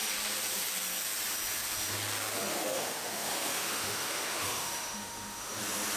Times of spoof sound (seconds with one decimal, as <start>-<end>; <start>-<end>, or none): 2.5-5.6